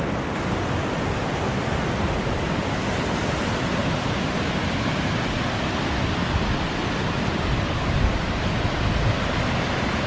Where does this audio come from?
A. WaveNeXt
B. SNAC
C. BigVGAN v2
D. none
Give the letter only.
D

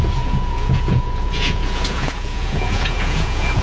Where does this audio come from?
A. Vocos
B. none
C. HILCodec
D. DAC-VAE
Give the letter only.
A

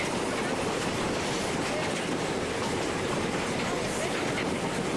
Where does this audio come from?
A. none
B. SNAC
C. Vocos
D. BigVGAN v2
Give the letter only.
A